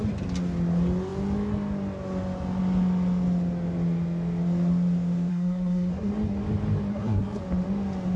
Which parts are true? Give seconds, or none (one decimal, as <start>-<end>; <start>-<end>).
0.0-5.3; 6.1-6.9; 7.4-8.2